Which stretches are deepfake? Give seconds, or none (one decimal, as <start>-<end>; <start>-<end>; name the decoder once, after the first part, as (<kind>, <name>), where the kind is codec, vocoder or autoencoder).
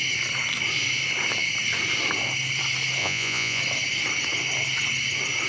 3.0-3.6 (vocoder, Vocos)